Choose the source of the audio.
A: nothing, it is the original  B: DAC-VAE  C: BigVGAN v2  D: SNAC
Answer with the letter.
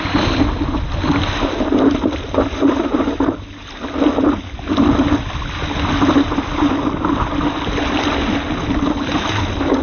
A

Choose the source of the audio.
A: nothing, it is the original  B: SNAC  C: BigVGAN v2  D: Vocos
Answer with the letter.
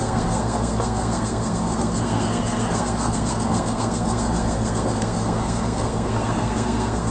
B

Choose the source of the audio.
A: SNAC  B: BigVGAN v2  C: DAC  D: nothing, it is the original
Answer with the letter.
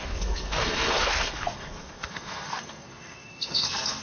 A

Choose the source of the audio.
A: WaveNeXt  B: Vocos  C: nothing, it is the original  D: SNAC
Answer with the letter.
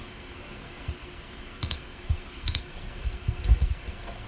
D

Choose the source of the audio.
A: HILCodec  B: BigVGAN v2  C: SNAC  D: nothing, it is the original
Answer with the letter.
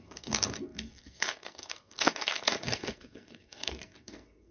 C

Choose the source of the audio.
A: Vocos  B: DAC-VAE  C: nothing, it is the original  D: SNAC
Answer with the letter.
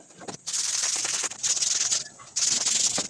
C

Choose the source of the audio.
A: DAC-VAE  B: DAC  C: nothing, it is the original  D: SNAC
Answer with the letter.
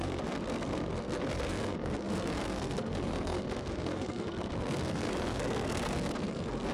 D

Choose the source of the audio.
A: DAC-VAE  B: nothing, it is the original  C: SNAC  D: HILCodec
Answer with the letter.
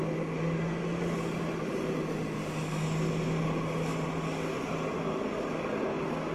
B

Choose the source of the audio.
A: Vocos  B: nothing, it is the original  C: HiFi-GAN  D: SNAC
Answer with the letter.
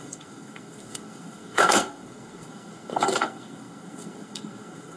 D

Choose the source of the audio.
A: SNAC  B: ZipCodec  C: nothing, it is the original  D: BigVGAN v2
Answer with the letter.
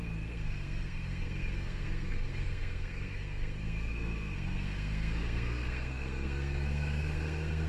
A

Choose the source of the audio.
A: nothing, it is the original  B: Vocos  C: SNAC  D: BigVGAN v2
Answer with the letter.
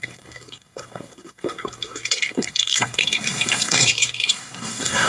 C